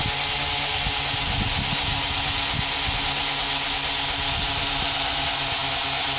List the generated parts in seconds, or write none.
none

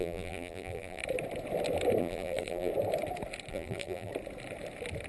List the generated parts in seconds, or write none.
0.0-1.0 (vocoder, BigVGAN v2); 2.0-2.7; 3.5-4.1

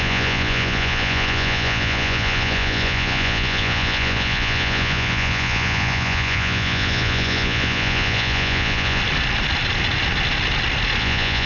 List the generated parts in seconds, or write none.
0.0-9.0 (vocoder, Vocos); 11.0-11.5

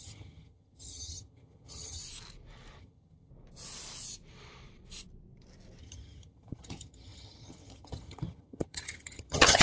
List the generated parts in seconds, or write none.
0.0-2.0 (vocoder, HiFi-GAN); 2.8-3.3; 5.8-9.6

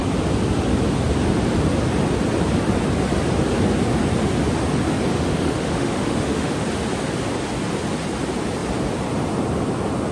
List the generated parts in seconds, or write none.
5.1-6.6 (autoencoder, DAC-VAE)